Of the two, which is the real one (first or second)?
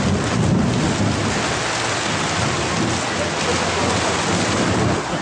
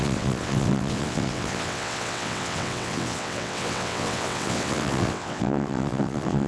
first